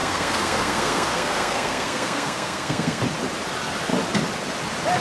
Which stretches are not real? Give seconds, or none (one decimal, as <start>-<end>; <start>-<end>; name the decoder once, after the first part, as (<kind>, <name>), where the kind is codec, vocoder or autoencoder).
0.0-3.0 (codec, SNAC)